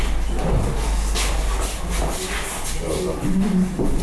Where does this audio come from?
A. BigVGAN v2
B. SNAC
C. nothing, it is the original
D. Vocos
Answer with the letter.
C